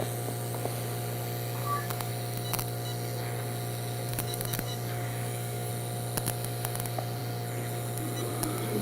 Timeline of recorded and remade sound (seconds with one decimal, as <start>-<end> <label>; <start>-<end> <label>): 0.0-1.6 recorded; 1.6-2.1 remade; 2.1-4.1 recorded; 4.1-5.7 remade; 5.7-8.8 recorded